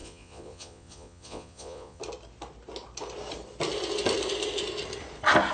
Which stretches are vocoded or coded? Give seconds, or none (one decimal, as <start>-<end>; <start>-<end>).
0.0-2.0